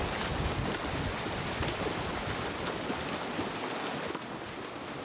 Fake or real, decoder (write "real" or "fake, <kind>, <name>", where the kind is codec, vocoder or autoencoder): real